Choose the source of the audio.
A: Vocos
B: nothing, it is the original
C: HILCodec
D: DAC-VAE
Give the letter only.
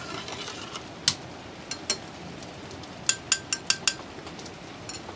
B